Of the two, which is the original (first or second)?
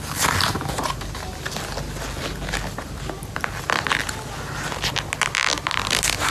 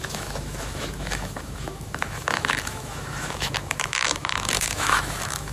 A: first